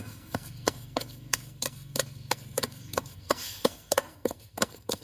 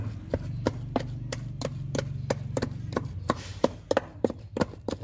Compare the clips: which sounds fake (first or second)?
first